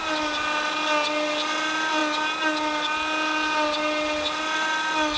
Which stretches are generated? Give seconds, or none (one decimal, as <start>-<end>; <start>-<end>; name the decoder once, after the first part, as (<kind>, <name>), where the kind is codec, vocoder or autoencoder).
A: none